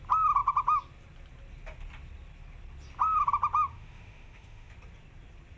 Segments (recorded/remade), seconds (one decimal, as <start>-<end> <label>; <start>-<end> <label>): 0.0-3.7 recorded; 3.7-4.7 remade; 4.7-5.6 recorded